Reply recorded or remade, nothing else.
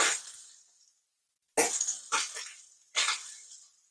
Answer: recorded